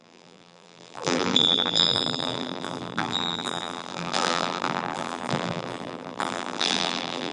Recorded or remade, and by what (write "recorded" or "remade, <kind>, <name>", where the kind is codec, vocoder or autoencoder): remade, vocoder, BigVGAN v2